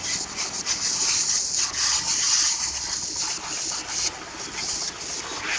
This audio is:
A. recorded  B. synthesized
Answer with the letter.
A